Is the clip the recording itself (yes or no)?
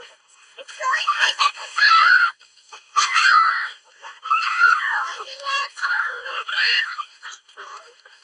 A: no